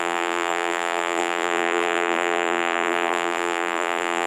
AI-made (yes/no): yes